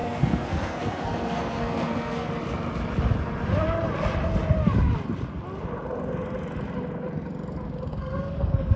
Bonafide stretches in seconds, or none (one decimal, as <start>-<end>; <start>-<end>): 2.3-7.9